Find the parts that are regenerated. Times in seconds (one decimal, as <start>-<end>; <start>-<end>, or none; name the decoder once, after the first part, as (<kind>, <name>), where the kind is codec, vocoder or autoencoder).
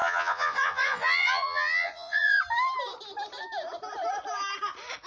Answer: 0.0-2.4 (vocoder, Vocos)